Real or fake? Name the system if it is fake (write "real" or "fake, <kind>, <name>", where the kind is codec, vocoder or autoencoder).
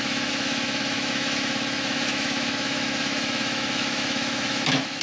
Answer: fake, autoencoder, DAC-VAE